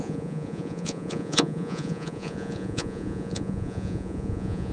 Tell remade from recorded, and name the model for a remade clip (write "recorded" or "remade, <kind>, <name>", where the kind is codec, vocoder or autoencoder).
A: remade, vocoder, Vocos